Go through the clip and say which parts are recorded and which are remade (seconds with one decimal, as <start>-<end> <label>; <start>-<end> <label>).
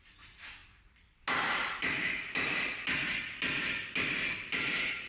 0.0-5.1 recorded